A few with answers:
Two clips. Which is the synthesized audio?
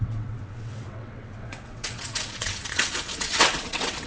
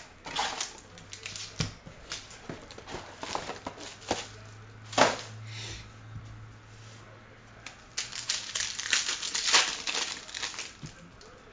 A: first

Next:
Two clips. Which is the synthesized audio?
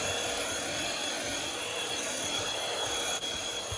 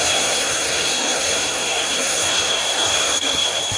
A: second